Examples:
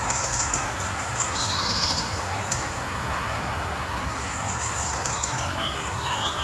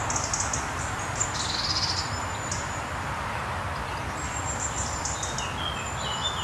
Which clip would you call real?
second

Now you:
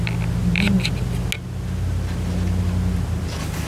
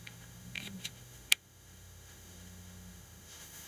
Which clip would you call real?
first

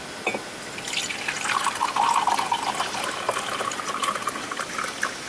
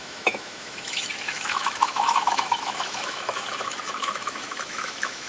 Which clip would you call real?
first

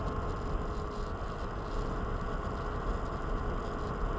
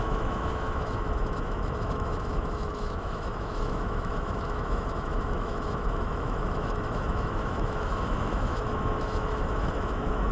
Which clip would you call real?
first